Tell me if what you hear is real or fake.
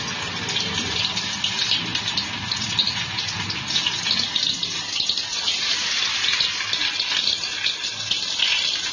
real